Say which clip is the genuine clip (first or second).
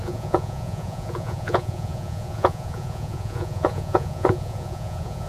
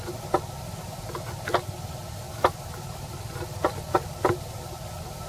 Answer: second